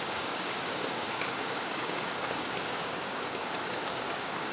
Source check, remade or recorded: remade